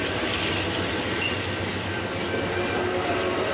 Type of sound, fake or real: real